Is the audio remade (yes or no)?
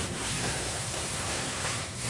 yes